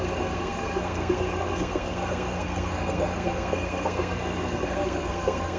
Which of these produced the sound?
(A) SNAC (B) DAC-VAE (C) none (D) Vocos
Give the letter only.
A